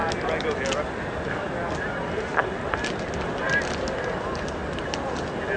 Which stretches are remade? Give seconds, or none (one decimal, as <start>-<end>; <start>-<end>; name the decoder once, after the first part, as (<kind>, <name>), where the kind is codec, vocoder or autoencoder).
none